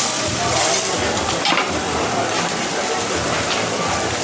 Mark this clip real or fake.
real